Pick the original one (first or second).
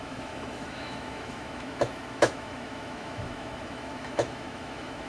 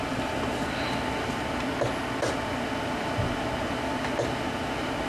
second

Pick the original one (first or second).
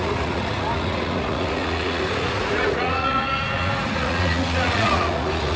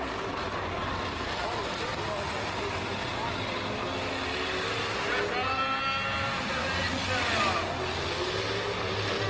second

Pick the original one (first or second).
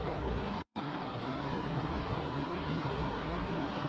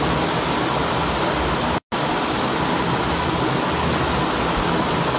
second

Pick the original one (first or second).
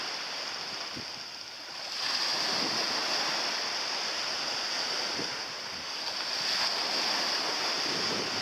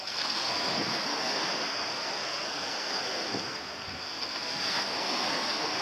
first